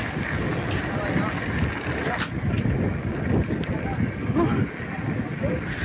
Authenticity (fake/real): real